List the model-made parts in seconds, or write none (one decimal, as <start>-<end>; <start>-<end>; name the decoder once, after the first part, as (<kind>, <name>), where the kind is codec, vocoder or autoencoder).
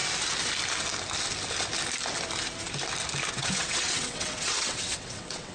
3.3-5.5 (vocoder, WaveNeXt)